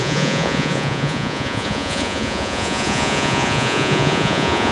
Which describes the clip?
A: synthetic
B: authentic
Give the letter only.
A